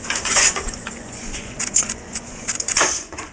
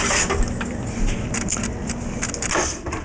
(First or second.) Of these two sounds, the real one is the second